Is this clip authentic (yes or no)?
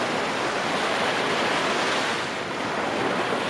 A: yes